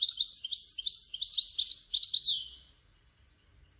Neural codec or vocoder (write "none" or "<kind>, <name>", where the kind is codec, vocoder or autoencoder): none